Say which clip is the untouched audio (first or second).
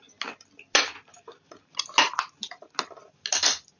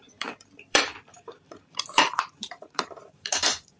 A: first